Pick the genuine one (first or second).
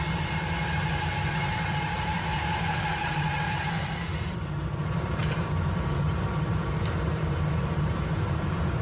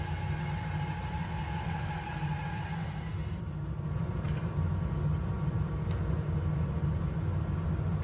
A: second